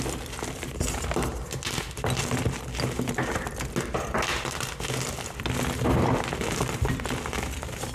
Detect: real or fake real